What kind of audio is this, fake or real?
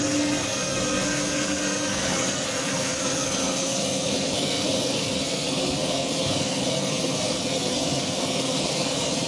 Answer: fake